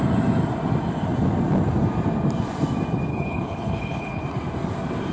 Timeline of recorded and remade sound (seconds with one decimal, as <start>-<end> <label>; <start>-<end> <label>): 0.0-3.1 recorded; 3.1-4.2 remade; 4.2-5.1 recorded